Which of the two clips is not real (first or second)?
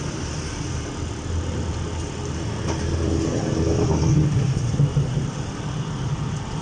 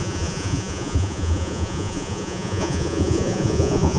second